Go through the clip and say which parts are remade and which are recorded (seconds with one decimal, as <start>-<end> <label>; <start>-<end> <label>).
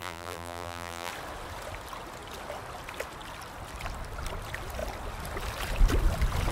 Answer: 0.0-1.1 remade; 1.1-6.5 recorded